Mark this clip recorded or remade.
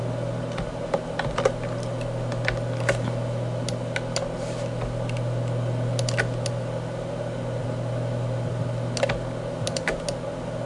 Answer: recorded